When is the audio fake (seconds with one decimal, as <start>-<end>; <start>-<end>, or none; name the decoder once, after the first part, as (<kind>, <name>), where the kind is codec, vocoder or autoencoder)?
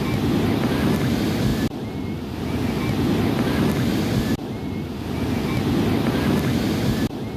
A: none